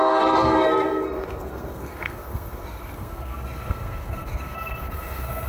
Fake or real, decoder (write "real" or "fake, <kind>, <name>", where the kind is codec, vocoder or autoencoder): fake, codec, SNAC